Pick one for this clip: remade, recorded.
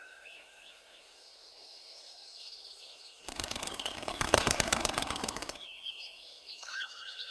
remade